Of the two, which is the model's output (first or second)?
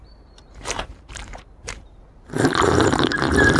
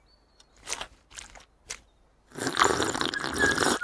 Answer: first